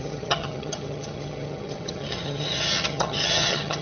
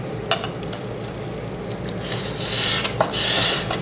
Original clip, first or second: second